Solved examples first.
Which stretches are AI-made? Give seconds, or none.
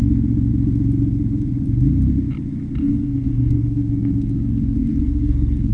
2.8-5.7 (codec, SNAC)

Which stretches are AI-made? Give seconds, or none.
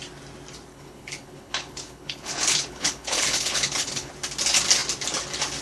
0.7-4.1 (codec, HILCodec)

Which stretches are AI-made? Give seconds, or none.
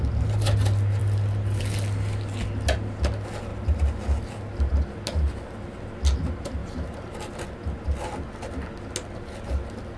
6.6-7.2 (vocoder, BigVGAN v2)